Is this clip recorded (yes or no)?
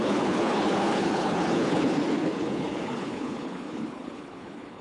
no